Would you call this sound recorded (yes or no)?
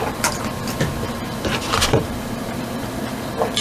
no